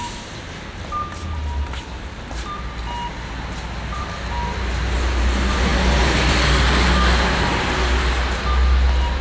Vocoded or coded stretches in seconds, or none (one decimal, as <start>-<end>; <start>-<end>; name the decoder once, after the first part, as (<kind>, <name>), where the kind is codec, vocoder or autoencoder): none